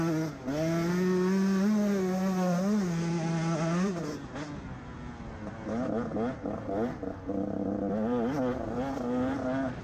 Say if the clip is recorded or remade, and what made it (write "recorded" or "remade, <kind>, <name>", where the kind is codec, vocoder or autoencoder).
recorded